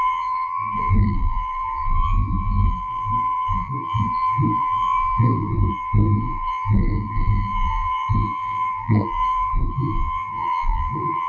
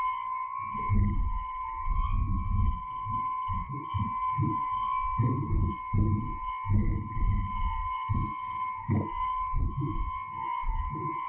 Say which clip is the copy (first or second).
first